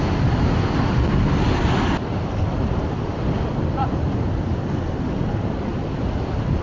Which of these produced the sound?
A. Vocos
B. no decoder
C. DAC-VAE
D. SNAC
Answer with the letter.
B